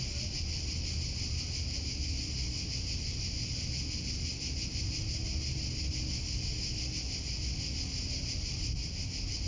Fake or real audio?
real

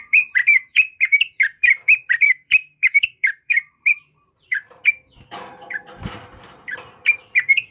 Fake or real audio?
fake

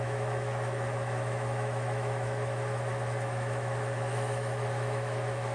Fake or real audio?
fake